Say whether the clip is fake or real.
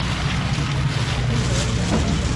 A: real